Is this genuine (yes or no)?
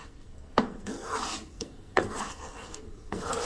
no